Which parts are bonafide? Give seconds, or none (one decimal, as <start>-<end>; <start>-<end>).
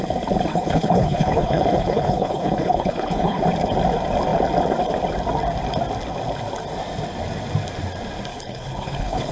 0.0-0.5; 3.4-8.3